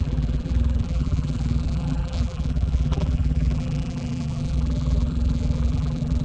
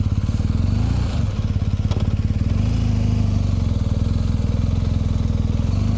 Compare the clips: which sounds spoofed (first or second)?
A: first